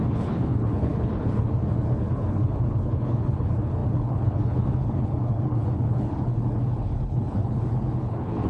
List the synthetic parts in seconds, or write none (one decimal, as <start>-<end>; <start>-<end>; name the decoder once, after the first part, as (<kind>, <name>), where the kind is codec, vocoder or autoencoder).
0.0-8.5 (codec, HILCodec)